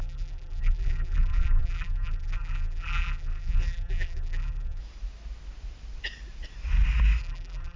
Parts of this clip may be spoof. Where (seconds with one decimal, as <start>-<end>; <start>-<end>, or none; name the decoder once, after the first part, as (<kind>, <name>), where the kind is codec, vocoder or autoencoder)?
0.0-4.8 (vocoder, BigVGAN v2); 7.2-7.8